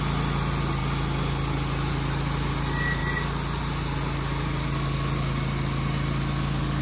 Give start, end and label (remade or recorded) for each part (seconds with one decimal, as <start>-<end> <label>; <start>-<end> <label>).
0.0-6.8 recorded